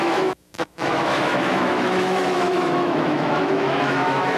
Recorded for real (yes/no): no